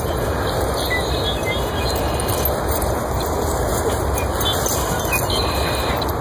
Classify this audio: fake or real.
real